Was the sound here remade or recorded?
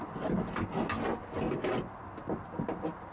recorded